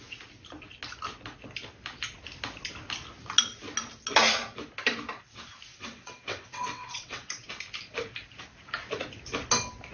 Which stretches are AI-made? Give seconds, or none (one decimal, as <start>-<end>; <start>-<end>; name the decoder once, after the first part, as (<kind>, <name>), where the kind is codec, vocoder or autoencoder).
5.7-7.5 (vocoder, WaveNeXt)